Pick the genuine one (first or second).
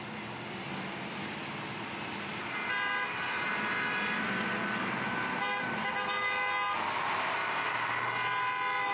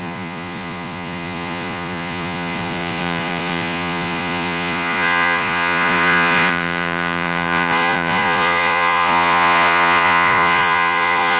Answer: first